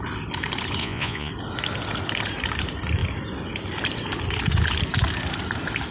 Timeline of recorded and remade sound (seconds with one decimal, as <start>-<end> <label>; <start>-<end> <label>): 0.0-0.8 recorded; 0.8-1.3 remade; 1.3-5.9 recorded